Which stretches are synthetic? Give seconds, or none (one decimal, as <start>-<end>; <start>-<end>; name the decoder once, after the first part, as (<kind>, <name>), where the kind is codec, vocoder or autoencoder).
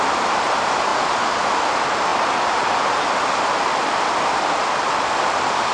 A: none